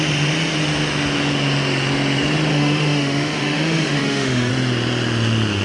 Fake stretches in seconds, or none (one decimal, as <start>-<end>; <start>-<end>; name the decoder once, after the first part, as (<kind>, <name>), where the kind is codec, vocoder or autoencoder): 2.5-4.5 (autoencoder, DAC-VAE)